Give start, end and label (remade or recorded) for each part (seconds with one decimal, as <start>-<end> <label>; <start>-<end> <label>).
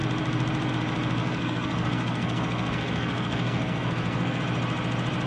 0.0-1.2 recorded; 1.2-4.4 remade; 4.4-5.3 recorded